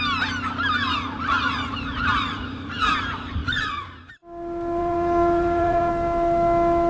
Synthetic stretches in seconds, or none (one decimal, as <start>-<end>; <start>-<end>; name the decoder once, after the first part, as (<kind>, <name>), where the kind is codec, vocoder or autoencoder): 0.9-2.9 (vocoder, Vocos); 3.4-4.1; 4.8-5.9